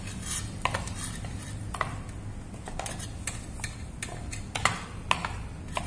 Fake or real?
real